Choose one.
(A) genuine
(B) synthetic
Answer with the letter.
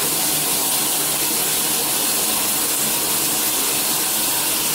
A